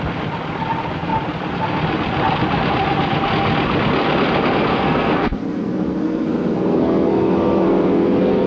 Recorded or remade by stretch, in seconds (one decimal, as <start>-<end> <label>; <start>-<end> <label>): 0.0-4.7 recorded; 4.7-8.5 remade